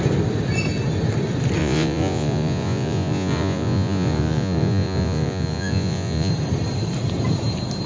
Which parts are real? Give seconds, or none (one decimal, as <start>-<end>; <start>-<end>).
0.0-1.6; 6.3-7.9